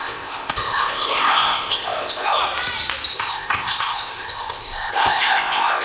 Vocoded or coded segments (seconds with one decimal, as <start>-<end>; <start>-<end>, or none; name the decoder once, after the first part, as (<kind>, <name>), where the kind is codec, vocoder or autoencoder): 0.0-2.4 (codec, ZipCodec); 3.1-5.8